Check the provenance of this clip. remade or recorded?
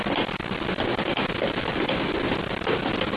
recorded